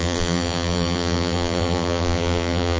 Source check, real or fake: fake